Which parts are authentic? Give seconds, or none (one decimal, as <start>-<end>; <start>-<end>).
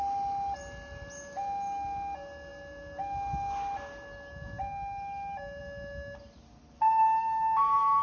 0.0-8.0